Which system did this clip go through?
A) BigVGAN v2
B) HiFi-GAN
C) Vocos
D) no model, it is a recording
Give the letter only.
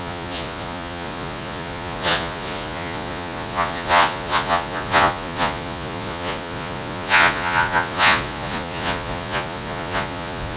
C